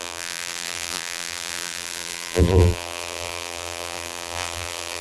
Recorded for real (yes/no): no